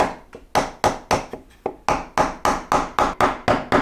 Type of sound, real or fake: real